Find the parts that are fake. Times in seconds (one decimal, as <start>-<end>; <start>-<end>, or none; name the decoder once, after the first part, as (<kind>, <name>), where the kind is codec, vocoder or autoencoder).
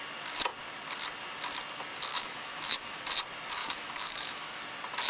2.1-3.0 (autoencoder, DAC-VAE); 3.6-4.6